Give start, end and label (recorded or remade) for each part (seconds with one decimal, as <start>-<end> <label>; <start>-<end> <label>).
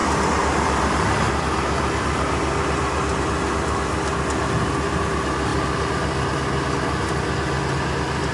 0.0-8.3 recorded